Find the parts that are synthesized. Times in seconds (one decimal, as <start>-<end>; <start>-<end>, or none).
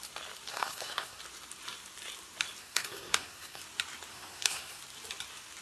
0.5-1.2; 2.6-3.6; 4.1-4.8